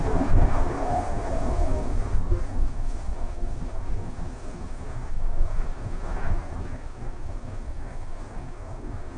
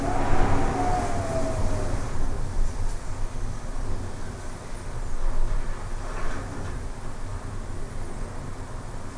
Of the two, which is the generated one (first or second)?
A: first